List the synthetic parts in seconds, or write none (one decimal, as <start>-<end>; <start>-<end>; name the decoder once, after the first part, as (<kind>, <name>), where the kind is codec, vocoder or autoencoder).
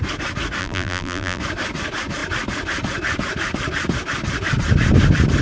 0.6-1.4 (vocoder, BigVGAN v2)